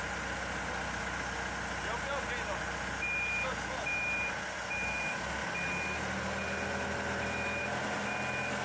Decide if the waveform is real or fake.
real